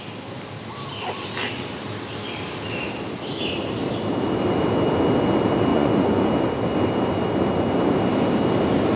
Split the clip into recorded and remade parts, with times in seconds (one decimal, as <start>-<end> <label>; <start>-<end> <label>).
0.0-5.7 recorded; 5.7-6.3 remade; 6.3-9.0 recorded